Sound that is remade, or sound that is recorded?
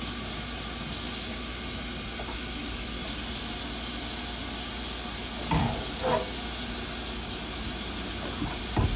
recorded